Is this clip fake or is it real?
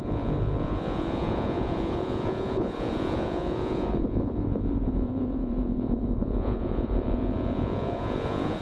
fake